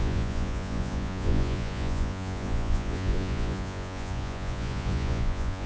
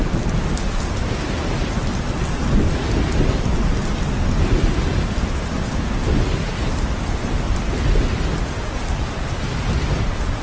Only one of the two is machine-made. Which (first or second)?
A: first